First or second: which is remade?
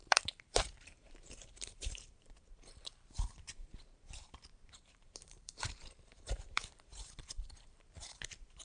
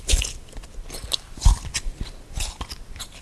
first